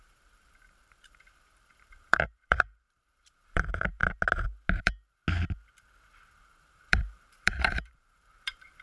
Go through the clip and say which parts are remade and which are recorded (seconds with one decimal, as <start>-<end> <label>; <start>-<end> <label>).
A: 0.0-4.0 remade; 4.0-4.8 recorded; 4.8-5.2 remade; 5.2-6.4 recorded; 6.4-8.8 remade